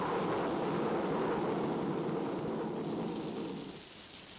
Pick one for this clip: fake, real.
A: real